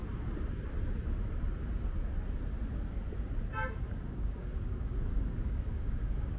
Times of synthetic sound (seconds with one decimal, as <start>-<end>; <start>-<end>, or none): 3.8-6.4